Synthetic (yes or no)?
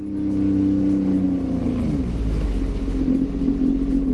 no